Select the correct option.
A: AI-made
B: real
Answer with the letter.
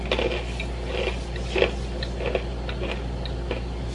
B